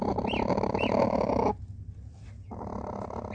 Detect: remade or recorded recorded